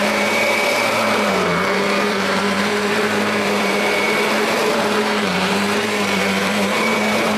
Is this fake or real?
fake